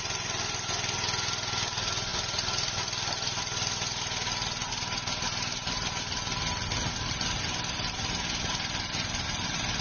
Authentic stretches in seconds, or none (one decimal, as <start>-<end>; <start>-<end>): 0.0-9.8